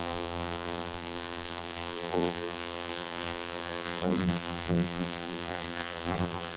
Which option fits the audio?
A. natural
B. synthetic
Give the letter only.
B